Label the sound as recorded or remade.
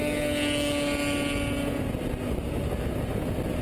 recorded